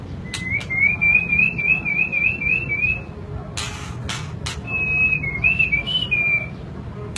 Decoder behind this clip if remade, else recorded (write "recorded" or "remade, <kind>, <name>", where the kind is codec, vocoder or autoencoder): recorded